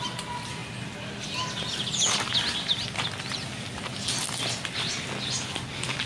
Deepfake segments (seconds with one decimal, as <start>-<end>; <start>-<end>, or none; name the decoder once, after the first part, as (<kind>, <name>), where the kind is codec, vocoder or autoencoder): none